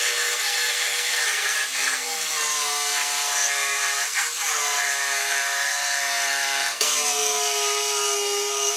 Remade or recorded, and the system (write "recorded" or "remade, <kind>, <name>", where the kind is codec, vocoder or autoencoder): remade, codec, SNAC